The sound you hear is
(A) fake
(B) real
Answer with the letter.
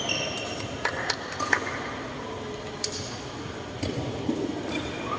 B